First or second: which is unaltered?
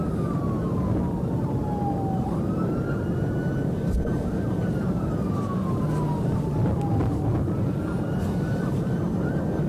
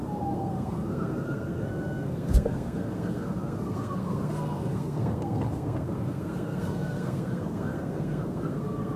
first